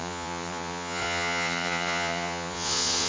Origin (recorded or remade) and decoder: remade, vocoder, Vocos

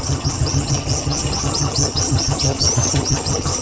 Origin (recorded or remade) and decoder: remade, vocoder, HiFi-GAN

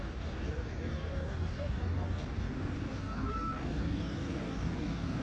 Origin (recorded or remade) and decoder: remade, codec, DAC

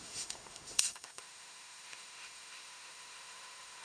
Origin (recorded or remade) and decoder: remade, autoencoder, DAC-VAE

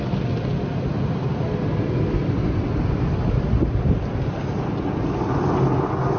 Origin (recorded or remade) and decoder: recorded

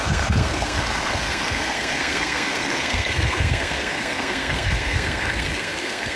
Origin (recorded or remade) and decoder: remade, codec, SNAC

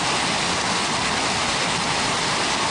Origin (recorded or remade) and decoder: recorded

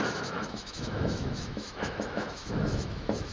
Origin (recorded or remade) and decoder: remade, autoencoder, DAC-VAE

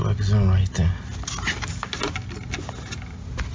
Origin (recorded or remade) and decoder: recorded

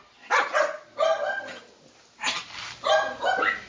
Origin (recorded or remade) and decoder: recorded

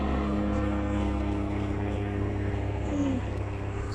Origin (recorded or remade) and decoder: remade, codec, SNAC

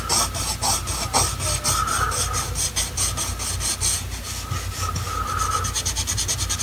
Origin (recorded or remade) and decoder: recorded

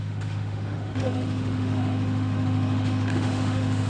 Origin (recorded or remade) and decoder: remade, autoencoder, DAC-VAE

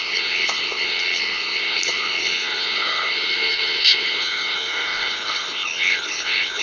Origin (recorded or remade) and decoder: remade, codec, HILCodec